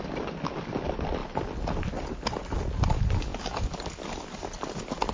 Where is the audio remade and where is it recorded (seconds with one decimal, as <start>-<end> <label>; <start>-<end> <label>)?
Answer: 0.0-1.2 recorded; 1.2-2.5 remade; 2.5-5.1 recorded

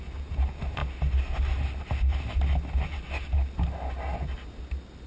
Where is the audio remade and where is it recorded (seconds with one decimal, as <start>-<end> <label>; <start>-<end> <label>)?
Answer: 0.0-5.1 recorded

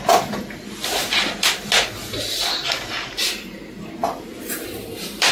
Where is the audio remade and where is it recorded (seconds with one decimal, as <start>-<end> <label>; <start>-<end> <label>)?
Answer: 0.0-4.0 recorded; 4.0-5.3 remade

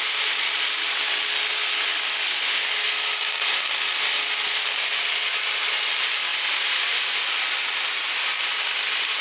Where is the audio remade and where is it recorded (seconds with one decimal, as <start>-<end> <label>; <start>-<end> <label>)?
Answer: 0.0-9.2 recorded

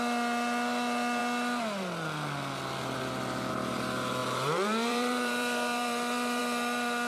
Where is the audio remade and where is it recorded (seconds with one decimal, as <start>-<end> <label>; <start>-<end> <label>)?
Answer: 0.0-4.2 recorded; 4.2-6.4 remade; 6.4-7.1 recorded

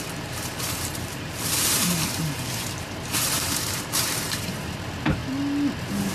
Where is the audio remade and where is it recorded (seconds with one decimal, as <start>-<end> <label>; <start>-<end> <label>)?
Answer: 0.0-5.2 remade; 5.2-6.1 recorded

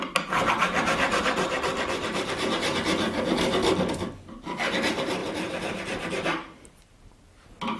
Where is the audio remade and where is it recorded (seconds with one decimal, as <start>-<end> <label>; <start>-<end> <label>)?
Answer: 0.0-5.2 recorded; 5.2-7.1 remade; 7.1-7.8 recorded